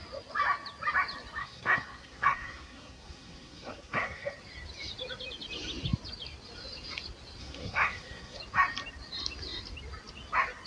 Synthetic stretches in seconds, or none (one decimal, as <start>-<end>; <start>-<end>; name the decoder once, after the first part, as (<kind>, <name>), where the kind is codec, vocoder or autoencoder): 1.4-4.3 (codec, SNAC); 7.4-8.4